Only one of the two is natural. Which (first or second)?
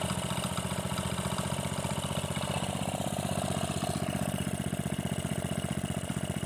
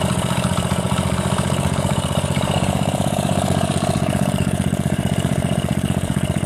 first